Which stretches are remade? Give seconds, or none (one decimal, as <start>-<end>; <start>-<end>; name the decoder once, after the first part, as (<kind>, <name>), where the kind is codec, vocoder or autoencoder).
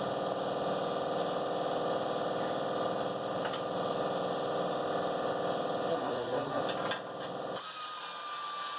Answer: 5.9-6.6 (codec, SNAC)